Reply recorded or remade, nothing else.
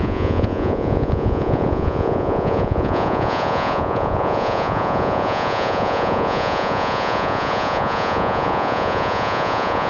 remade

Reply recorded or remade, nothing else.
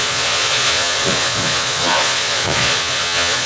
remade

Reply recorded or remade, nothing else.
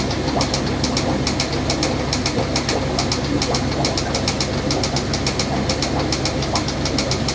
recorded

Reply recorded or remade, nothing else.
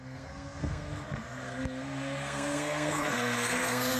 remade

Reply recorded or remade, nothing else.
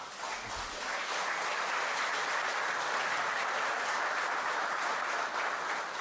recorded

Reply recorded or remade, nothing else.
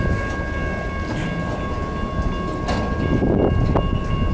recorded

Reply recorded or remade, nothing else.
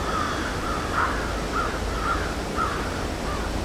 recorded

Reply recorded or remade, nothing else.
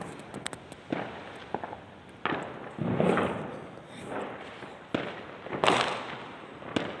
recorded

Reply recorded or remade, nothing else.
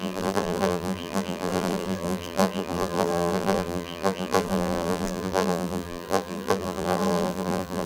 remade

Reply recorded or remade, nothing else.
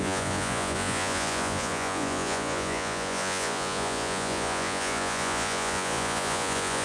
remade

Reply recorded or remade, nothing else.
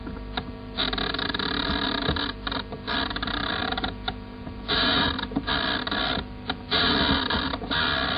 recorded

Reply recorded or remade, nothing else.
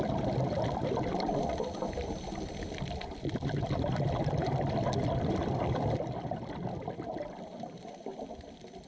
remade